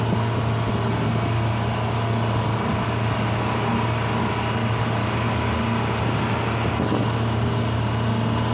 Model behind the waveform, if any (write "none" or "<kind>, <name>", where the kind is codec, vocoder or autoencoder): none